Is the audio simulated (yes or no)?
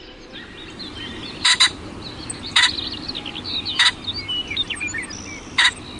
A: no